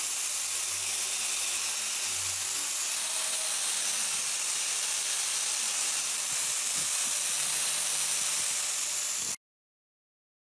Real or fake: real